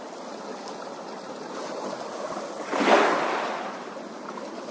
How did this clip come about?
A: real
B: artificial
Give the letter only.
A